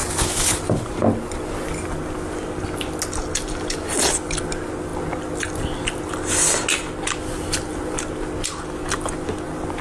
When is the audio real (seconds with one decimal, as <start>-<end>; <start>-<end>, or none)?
0.0-9.8